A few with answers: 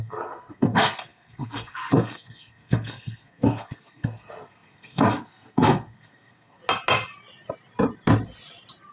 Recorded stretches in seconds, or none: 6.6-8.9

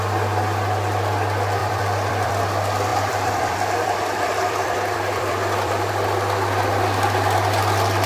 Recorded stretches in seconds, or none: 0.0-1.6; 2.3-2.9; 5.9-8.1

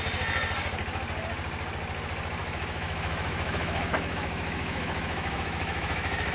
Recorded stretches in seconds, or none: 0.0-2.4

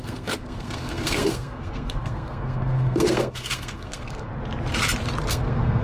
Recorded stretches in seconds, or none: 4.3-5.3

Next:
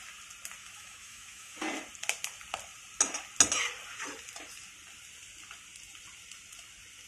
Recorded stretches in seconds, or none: 0.0-0.6; 1.6-7.1

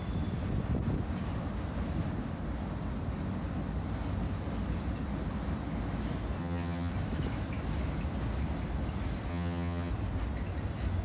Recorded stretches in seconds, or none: 0.0-6.4; 6.9-9.3; 9.9-11.0

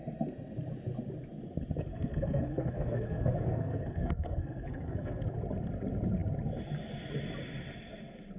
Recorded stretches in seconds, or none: 0.0-1.9; 5.2-8.4